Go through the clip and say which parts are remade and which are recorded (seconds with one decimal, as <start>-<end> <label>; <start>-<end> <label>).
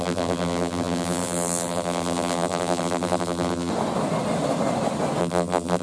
0.0-3.7 remade; 3.7-5.2 recorded; 5.2-5.8 remade